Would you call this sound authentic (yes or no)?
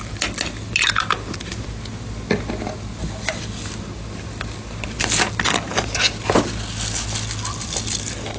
yes